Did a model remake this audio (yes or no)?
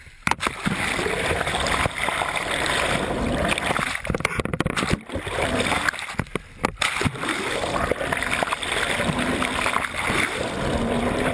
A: no